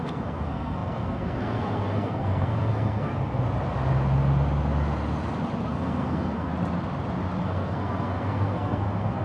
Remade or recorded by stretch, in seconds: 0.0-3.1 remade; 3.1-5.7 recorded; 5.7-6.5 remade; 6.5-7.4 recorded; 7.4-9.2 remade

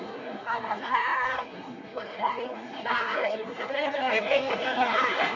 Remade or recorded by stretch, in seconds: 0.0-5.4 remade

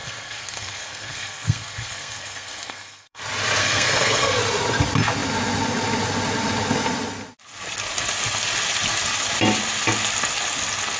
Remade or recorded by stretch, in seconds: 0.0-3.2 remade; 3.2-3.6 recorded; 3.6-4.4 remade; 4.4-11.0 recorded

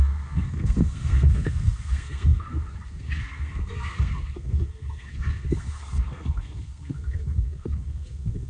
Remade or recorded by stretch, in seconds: 0.0-8.5 remade